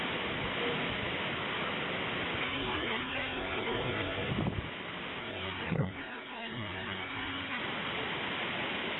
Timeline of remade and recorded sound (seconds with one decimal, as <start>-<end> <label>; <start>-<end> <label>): 0.0-2.4 recorded; 2.4-4.3 remade; 4.3-5.2 recorded; 5.2-7.6 remade; 7.6-9.0 recorded